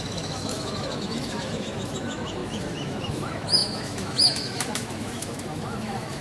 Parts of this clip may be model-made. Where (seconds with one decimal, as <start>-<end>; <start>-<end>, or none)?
0.0-6.2